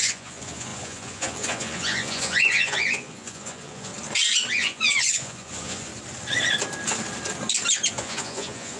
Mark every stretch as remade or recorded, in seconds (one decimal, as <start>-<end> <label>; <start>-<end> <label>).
0.0-3.9 remade; 3.9-4.5 recorded; 4.5-5.9 remade; 5.9-7.9 recorded; 7.9-8.8 remade